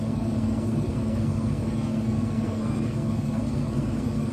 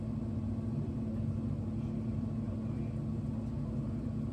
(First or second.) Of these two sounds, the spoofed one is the first